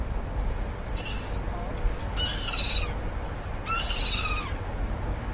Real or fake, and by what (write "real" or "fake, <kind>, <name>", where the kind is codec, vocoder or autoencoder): real